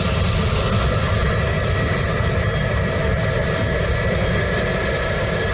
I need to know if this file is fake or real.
real